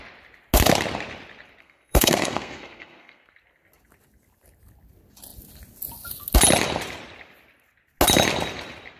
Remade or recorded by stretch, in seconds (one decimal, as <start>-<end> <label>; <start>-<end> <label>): 0.0-1.6 recorded; 1.6-3.3 remade; 3.3-9.0 recorded

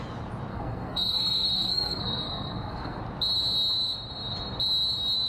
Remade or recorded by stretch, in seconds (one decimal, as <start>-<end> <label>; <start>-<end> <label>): 0.0-0.5 recorded; 0.5-3.0 remade; 3.0-5.3 recorded

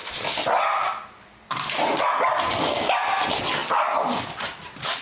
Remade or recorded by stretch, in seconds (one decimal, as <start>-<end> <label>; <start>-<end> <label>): 0.0-5.0 recorded